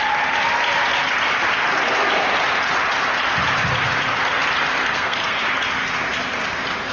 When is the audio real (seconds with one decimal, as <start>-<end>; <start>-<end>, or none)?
0.0-4.8; 5.4-6.9